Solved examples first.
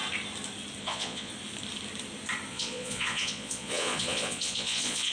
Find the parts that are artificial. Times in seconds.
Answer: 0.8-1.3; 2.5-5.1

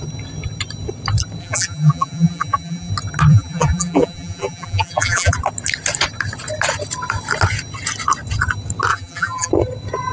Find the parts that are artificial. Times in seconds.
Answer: 1.4-2.9; 3.3-5.3; 8.9-9.5